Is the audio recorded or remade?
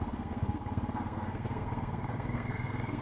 remade